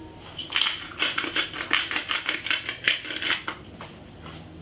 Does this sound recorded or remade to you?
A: recorded